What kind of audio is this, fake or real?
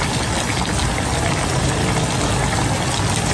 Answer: real